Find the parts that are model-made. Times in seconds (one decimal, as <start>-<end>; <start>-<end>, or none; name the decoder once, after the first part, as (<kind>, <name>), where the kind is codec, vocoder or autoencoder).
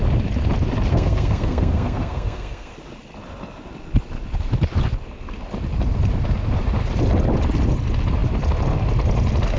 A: 0.9-2.7 (codec, SNAC)